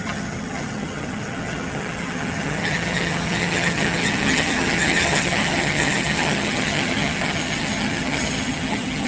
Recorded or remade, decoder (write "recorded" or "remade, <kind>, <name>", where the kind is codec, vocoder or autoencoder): remade, vocoder, HiFi-GAN